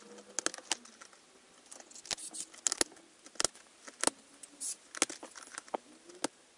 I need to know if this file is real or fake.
real